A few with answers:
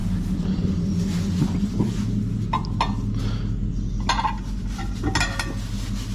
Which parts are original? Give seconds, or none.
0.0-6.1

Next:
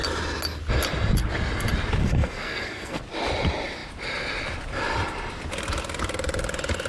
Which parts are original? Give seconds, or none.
0.0-2.0; 3.0-6.9

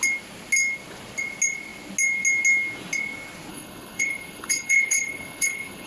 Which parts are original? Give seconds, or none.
0.0-3.5

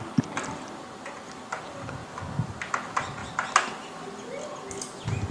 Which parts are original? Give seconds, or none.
0.0-5.3

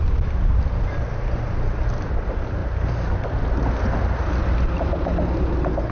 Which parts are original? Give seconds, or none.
0.0-5.9